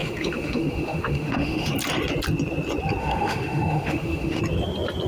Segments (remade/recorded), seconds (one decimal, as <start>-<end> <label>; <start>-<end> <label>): 0.0-1.7 remade; 1.7-3.0 recorded; 3.0-4.4 remade; 4.4-5.1 recorded